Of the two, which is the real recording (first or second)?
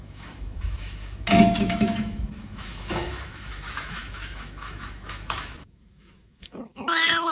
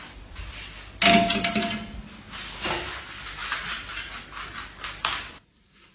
second